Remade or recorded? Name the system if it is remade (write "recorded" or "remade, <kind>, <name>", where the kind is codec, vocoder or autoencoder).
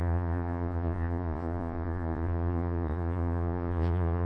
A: remade, vocoder, Vocos